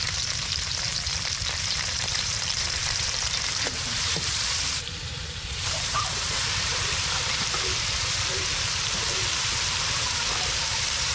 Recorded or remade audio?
remade